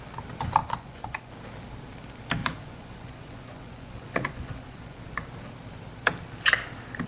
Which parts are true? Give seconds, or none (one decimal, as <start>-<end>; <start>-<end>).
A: 0.0-0.6; 1.3-2.4; 5.0-7.1